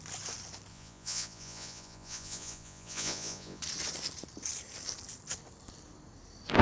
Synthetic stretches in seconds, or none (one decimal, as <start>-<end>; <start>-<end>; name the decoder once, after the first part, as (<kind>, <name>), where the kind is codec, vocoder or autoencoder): 0.7-3.6 (vocoder, Vocos)